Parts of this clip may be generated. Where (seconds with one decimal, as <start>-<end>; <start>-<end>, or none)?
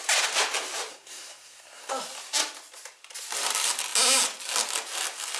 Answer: 0.9-1.9